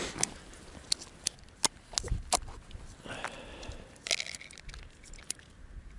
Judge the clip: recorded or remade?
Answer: recorded